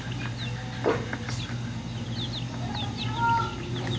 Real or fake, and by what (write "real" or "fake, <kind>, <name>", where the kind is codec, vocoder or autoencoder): real